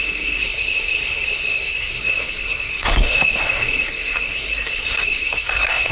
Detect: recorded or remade remade